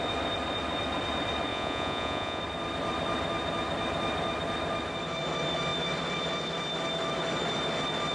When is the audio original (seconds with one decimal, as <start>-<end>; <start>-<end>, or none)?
0.0-1.5; 2.4-8.1